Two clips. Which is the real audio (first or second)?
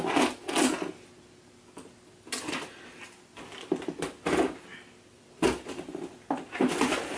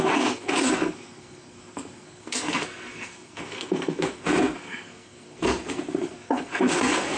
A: first